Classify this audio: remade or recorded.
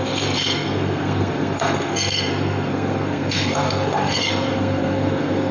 remade